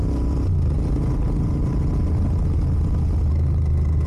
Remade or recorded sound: recorded